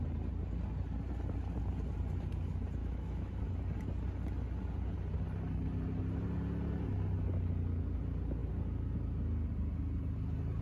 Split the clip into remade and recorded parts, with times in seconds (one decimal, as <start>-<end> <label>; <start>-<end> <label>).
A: 0.0-2.8 recorded; 2.8-3.4 remade; 3.4-10.6 recorded